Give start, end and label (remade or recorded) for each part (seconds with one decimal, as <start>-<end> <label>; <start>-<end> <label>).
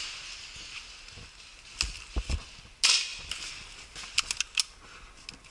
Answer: 0.0-5.5 recorded